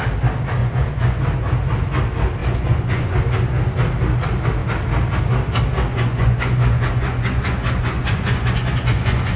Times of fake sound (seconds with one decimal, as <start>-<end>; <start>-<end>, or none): 0.6-1.2; 2.4-3.2; 5.9-9.4